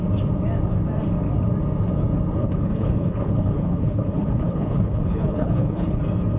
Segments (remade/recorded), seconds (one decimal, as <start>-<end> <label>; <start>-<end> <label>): 0.0-2.4 recorded; 2.4-6.0 remade; 6.0-6.4 recorded